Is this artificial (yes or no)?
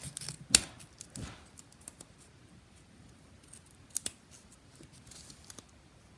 no